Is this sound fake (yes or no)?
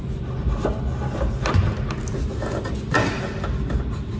no